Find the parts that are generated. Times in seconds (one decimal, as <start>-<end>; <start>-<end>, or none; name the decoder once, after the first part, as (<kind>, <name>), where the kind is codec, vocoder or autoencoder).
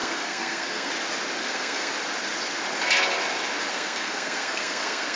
0.0-0.9 (codec, SNAC); 1.4-1.9; 3.7-5.2